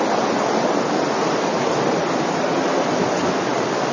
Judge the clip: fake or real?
real